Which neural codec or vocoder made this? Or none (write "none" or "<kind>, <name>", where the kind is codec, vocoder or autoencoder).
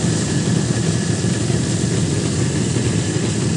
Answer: none